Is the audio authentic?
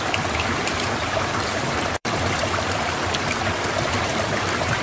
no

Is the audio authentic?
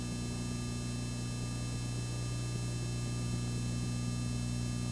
yes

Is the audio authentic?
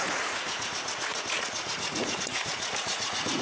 no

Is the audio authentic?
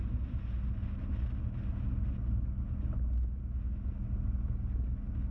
yes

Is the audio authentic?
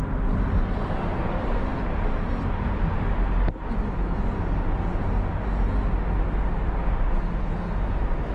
yes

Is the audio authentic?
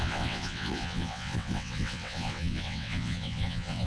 no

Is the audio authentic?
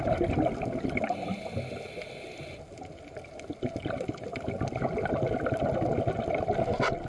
yes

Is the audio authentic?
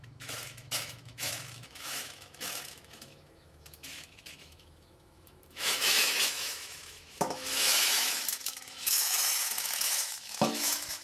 no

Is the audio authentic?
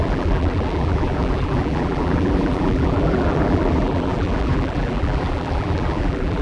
no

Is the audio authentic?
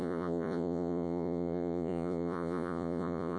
no